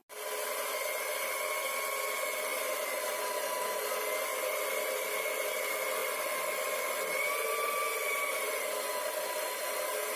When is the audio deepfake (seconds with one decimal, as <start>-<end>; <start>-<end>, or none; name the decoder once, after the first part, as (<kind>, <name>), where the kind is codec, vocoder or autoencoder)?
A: 2.5-3.7 (vocoder, BigVGAN v2); 6.0-8.3